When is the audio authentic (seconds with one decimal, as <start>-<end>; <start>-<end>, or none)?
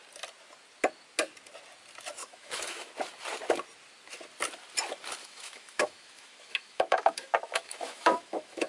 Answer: 0.0-2.2; 2.9-5.2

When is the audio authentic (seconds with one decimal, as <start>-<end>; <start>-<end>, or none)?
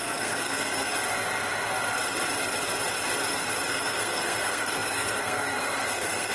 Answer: 0.9-3.7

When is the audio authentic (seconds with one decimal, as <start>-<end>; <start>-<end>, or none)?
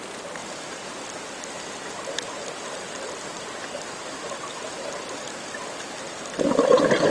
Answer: 0.0-7.1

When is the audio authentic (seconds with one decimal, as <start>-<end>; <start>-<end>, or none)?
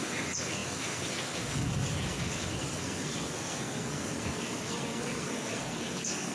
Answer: none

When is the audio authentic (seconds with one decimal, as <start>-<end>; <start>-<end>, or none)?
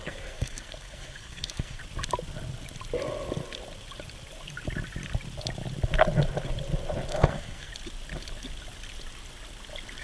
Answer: 1.8-7.1; 7.7-10.0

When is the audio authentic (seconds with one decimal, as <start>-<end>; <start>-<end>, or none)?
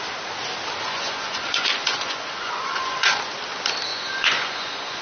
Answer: 0.0-0.8; 3.2-3.9